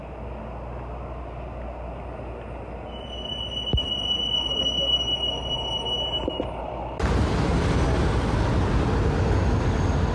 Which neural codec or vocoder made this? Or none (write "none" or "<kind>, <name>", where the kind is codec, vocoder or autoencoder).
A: none